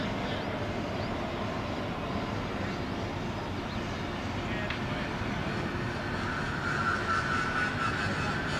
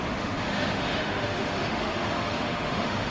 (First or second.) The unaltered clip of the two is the first